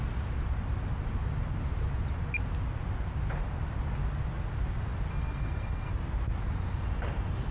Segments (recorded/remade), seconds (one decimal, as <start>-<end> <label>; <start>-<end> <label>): 0.0-5.1 recorded; 5.1-5.9 remade; 5.9-7.5 recorded